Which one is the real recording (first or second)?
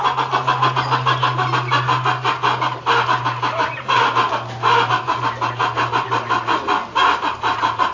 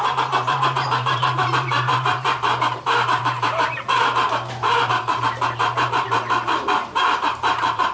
first